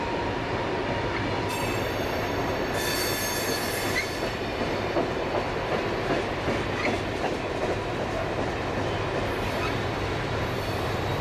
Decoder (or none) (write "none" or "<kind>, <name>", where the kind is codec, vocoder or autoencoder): none